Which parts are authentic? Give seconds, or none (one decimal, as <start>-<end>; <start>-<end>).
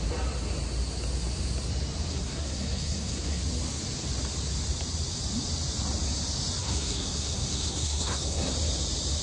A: 0.0-2.1; 3.4-6.6; 8.5-9.2